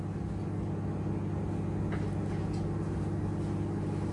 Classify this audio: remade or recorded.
recorded